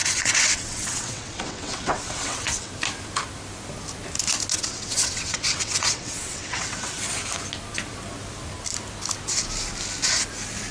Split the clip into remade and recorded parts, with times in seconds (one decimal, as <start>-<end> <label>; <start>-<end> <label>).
0.0-2.7 remade; 2.7-4.5 recorded; 4.5-7.0 remade; 7.0-10.7 recorded

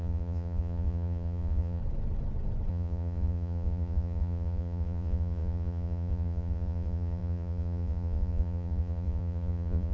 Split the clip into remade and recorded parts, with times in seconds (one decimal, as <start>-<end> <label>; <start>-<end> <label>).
0.0-1.8 remade; 1.8-2.7 recorded; 2.7-9.9 remade

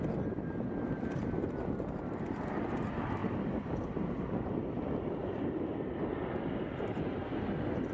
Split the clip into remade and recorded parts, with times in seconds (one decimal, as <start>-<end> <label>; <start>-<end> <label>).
0.0-7.9 recorded

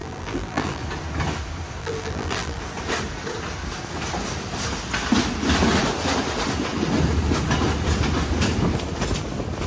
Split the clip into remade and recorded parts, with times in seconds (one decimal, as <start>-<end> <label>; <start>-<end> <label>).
0.0-0.8 remade; 0.8-1.8 recorded; 1.8-2.6 remade; 2.6-9.7 recorded

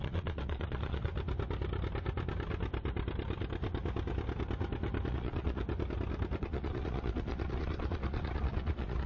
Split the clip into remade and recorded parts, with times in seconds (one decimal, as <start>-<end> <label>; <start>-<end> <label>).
0.0-1.1 remade; 1.1-5.1 recorded; 5.1-5.6 remade; 5.6-6.4 recorded; 6.4-9.1 remade